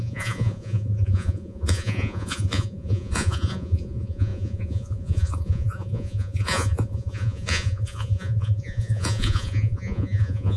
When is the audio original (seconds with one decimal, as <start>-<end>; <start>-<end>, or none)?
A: none